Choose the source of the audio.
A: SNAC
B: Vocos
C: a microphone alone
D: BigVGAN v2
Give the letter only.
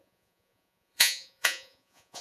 B